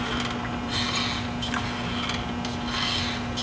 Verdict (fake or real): real